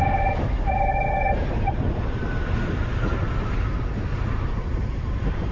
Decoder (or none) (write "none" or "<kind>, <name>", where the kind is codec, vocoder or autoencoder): none